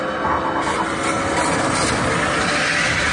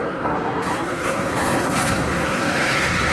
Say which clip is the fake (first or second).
second